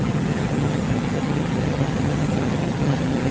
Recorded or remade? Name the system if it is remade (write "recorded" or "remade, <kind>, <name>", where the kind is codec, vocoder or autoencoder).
remade, vocoder, HiFi-GAN